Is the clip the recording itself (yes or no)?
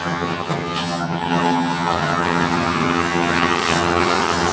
no